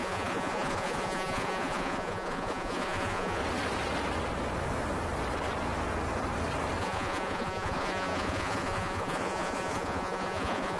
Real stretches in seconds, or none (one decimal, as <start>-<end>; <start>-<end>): 3.4-6.8